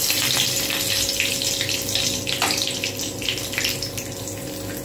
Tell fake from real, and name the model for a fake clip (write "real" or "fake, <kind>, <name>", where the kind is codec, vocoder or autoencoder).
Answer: real